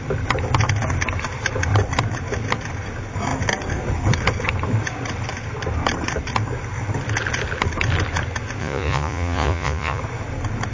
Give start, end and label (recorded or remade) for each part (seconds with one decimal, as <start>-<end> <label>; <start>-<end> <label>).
0.0-8.6 recorded; 8.6-10.0 remade; 10.0-10.7 recorded

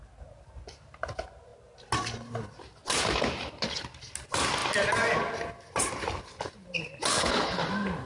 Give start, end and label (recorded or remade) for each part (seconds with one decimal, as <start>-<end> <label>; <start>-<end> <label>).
0.0-7.1 recorded; 7.1-7.6 remade; 7.6-8.1 recorded

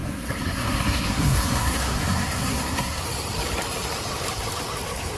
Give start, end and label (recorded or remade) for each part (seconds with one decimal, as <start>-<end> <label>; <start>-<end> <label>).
0.0-3.0 remade; 3.0-5.2 recorded

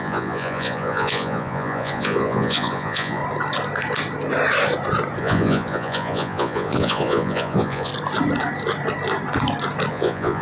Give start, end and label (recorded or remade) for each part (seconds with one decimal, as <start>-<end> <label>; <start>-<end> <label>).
0.0-3.2 remade; 3.2-5.2 recorded; 5.2-7.9 remade; 7.9-9.9 recorded; 9.9-10.4 remade

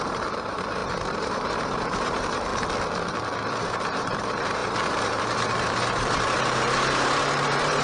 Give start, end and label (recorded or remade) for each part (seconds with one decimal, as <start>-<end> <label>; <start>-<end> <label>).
0.0-2.5 remade; 2.5-3.6 recorded; 3.6-7.8 remade

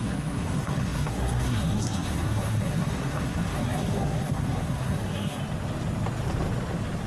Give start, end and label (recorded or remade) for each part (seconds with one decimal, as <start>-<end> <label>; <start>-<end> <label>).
0.0-5.4 remade; 5.4-7.1 recorded

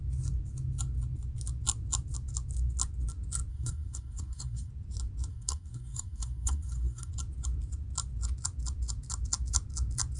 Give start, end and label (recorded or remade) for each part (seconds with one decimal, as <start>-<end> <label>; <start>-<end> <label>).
0.0-3.5 recorded; 3.5-4.7 remade; 4.7-5.3 recorded; 5.3-7.1 remade; 7.1-10.2 recorded